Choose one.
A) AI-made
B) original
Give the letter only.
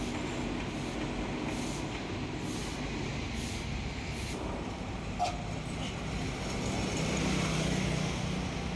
B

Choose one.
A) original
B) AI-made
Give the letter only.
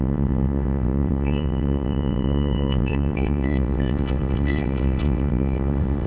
B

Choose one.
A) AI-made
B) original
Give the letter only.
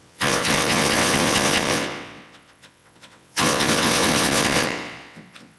A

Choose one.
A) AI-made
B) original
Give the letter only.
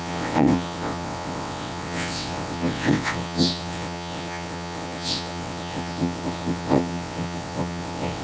A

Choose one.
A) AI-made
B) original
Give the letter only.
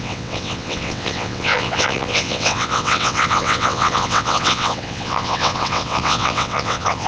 A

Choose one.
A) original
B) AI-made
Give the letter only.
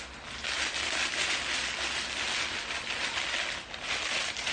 A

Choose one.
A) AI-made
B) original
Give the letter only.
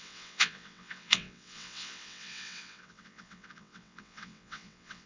A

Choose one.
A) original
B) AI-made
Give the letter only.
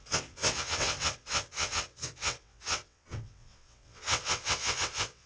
B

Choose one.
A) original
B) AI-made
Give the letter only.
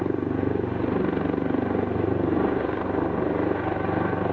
A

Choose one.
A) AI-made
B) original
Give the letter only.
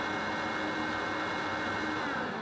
B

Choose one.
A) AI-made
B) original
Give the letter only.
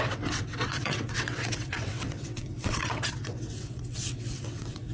A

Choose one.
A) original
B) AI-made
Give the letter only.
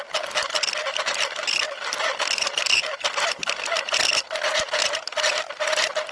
A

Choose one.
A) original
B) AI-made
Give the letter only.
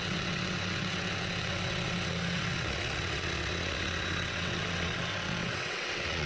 B